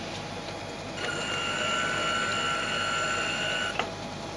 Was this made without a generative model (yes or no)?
yes